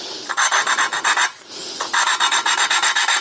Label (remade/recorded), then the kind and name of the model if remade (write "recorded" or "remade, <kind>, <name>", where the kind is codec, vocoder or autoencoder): recorded